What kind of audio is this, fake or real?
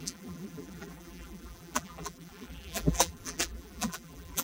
fake